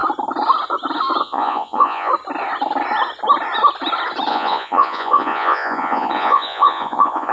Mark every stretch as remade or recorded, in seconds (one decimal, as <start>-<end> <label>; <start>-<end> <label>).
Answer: 0.0-1.2 recorded; 1.2-2.1 remade; 2.1-4.3 recorded; 4.3-7.3 remade

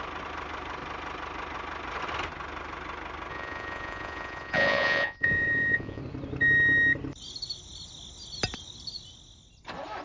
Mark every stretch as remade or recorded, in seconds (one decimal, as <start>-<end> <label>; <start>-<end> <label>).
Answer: 0.0-3.3 recorded; 3.3-6.0 remade; 6.0-10.0 recorded

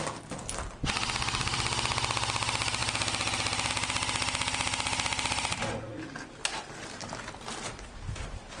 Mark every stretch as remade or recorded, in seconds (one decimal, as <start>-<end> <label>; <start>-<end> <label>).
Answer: 0.0-8.6 recorded